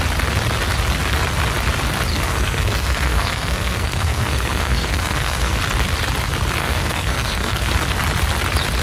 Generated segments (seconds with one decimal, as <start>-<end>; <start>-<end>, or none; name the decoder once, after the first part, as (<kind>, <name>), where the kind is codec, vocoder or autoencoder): 2.1-5.6 (codec, SNAC); 6.6-7.7